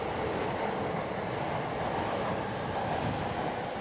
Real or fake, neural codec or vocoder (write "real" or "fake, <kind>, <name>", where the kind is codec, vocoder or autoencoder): real